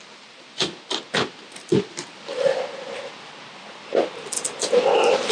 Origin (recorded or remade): recorded